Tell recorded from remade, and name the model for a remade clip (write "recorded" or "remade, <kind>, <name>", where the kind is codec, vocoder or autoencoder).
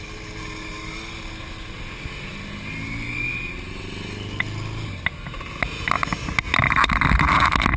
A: recorded